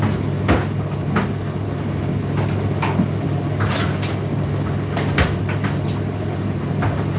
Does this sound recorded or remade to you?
recorded